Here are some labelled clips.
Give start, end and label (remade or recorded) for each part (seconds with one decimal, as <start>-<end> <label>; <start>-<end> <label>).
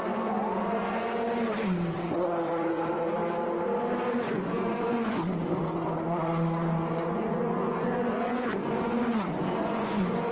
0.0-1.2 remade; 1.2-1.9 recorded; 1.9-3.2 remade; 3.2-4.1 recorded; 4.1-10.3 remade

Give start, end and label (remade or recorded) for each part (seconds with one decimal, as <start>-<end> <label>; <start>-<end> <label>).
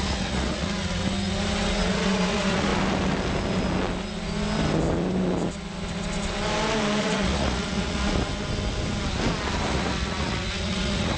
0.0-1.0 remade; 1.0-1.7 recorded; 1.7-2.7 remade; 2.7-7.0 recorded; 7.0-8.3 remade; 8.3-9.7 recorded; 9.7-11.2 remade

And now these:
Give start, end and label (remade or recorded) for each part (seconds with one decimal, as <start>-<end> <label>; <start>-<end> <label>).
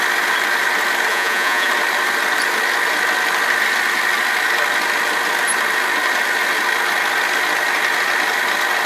0.0-1.1 recorded; 1.1-1.7 remade; 1.7-8.9 recorded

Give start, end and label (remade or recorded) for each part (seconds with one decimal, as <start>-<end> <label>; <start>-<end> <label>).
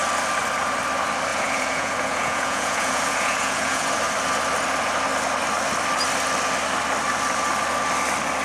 0.0-1.3 recorded; 1.3-3.9 remade; 3.9-8.4 recorded